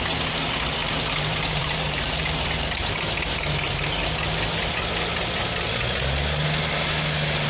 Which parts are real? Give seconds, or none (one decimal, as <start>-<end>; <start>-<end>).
0.0-0.8; 2.5-7.5